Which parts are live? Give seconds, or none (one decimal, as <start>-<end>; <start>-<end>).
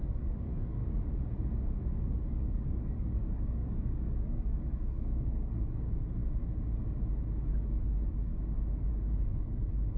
0.8-2.1; 6.2-7.5; 8.3-8.9